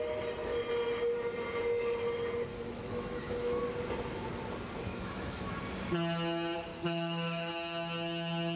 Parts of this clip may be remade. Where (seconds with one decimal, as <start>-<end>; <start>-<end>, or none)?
2.5-3.6; 4.9-5.5; 6.7-7.5